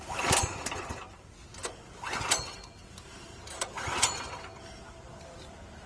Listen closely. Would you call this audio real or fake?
real